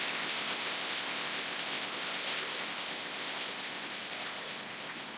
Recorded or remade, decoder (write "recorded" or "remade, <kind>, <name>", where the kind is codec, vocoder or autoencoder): remade, codec, ZipCodec